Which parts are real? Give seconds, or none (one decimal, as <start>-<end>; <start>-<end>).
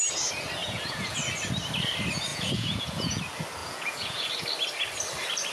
0.0-0.6; 1.2-2.3; 3.2-3.6; 4.3-5.5